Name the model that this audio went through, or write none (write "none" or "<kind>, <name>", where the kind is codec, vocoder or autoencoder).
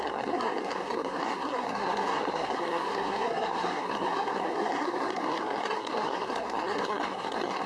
codec, SNAC